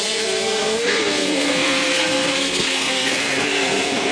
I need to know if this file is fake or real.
fake